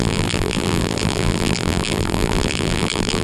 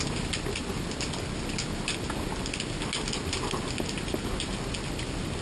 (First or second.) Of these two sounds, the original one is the second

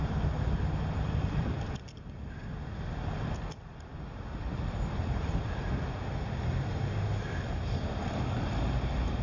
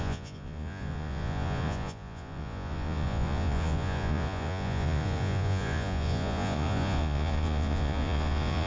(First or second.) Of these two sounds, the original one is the first